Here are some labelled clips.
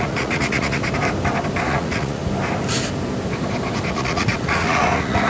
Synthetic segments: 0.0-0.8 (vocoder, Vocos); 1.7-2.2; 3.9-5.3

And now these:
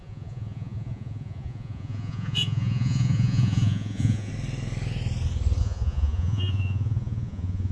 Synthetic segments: 0.0-4.3 (vocoder, Vocos); 5.6-7.7

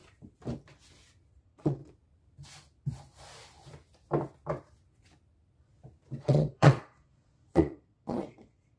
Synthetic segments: 1.4-1.8 (vocoder, Vocos); 6.2-8.8

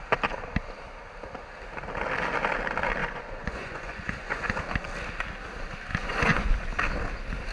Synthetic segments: 3.0-4.6 (vocoder, Vocos); 5.9-6.5

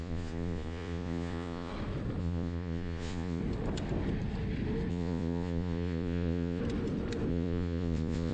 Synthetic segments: 0.0-1.7 (vocoder, Vocos); 2.2-3.4; 4.9-6.6; 7.3-8.3

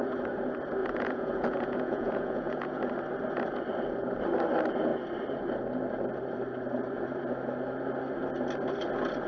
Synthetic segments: 0.8-2.8 (vocoder, Vocos)